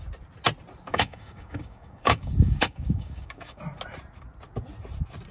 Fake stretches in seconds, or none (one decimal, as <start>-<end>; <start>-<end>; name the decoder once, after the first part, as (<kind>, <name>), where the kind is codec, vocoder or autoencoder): 0.9-3.6 (codec, DAC)